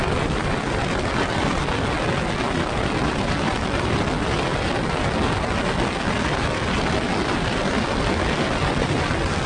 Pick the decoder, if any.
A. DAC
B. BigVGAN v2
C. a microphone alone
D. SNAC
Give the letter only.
C